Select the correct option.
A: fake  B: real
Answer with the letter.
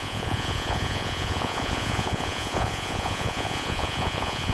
A